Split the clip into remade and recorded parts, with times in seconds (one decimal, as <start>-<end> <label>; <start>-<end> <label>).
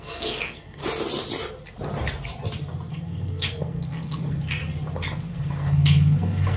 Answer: 0.0-0.8 remade; 0.8-2.9 recorded; 2.9-4.6 remade; 4.6-5.3 recorded; 5.3-6.6 remade